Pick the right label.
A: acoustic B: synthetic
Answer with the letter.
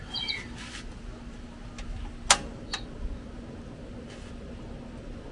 A